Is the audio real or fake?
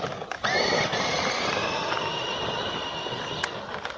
real